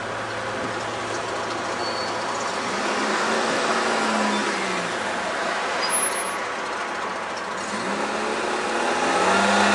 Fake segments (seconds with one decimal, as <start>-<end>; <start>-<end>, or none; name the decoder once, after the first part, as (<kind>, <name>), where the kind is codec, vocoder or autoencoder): 3.1-3.7 (codec, DAC)

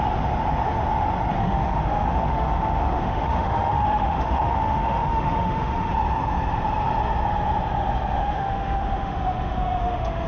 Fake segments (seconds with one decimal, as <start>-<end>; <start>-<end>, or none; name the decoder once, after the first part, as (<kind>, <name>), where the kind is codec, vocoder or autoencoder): 1.4-5.9 (autoencoder, DAC-VAE); 8.2-10.3

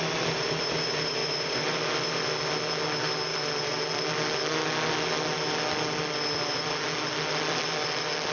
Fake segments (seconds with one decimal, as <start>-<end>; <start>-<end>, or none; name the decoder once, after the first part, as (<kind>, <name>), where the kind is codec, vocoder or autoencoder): 1.2-2.2 (vocoder, BigVGAN v2); 3.3-4.0

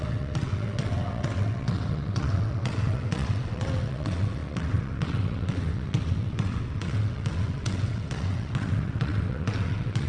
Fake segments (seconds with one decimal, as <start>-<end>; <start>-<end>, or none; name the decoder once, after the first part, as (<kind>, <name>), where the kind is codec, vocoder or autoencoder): 0.0-10.1 (vocoder, WaveNeXt)

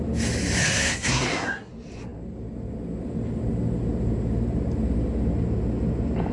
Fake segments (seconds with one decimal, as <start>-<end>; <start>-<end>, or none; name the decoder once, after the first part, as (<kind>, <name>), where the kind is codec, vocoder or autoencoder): 0.6-1.7 (codec, SNAC)

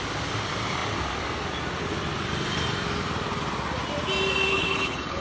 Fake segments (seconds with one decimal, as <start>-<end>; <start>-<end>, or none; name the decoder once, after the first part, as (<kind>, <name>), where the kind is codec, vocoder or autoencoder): 4.5-5.2 (codec, HILCodec)